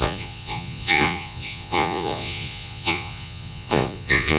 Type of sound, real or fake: fake